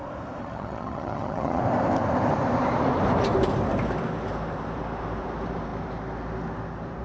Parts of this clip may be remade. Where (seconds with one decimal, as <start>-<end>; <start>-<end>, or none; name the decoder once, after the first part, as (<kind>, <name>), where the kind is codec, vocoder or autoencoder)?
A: 0.4-1.6 (vocoder, HiFi-GAN)